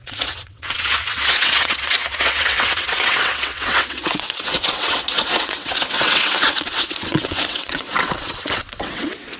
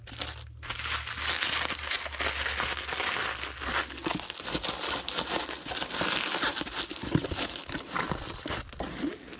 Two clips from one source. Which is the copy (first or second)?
first